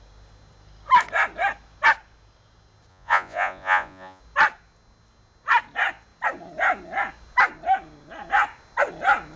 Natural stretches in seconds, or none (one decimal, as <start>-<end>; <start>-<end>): 0.0-2.9; 4.2-9.4

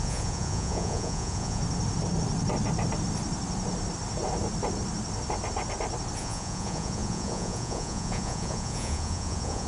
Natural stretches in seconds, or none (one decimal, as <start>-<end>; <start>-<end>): 1.6-6.2